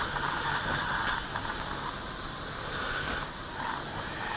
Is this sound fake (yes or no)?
no